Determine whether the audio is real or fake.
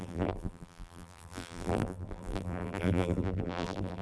fake